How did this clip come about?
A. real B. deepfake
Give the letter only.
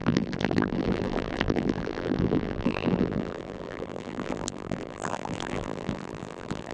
B